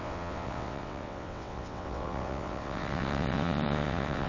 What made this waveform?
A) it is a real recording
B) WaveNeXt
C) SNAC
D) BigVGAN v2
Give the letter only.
B